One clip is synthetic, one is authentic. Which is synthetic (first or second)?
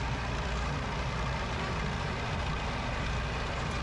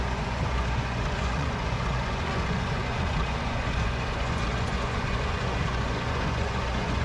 second